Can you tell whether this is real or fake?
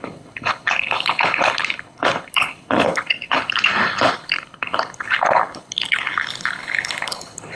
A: fake